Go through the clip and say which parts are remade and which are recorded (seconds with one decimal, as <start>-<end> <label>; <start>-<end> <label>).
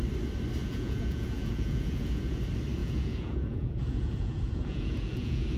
0.0-0.6 recorded; 0.6-2.4 remade; 2.4-2.8 recorded; 2.8-5.6 remade